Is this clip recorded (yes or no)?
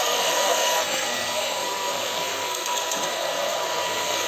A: no